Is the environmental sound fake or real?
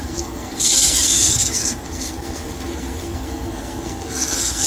fake